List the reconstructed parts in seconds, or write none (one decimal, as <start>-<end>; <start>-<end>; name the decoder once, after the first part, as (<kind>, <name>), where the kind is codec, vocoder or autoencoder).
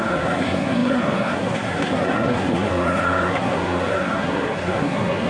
0.0-5.3 (codec, SNAC)